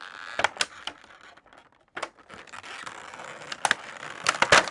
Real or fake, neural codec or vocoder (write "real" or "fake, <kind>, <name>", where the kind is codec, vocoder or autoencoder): real